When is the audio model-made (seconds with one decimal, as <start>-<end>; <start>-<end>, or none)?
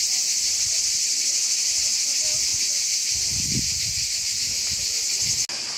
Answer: none